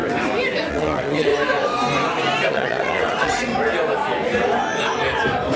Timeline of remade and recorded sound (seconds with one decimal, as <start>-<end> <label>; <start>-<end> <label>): 0.0-0.7 recorded; 0.7-1.3 remade; 1.3-2.5 recorded; 2.5-3.5 remade; 3.5-5.6 recorded